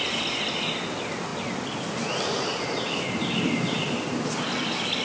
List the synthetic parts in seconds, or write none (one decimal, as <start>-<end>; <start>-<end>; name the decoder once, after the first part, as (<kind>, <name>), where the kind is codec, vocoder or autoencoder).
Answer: none